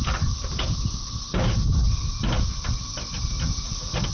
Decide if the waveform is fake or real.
real